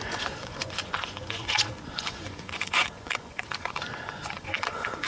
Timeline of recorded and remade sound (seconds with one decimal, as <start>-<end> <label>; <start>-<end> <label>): 0.0-5.1 remade